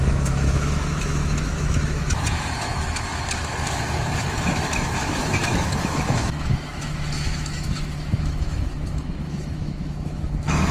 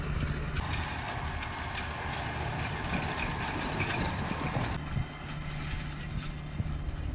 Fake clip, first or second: first